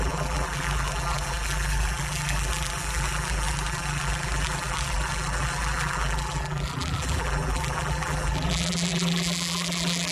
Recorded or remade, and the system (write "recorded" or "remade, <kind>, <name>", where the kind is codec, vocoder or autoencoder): remade, vocoder, BigVGAN v2